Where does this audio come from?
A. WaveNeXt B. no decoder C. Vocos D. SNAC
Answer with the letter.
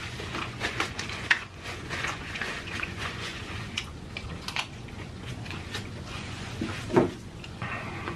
C